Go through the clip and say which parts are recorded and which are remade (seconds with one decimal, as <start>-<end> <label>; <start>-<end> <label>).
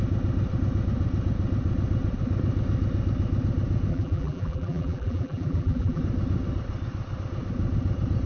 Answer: 0.0-3.9 recorded; 3.9-6.0 remade; 6.0-8.3 recorded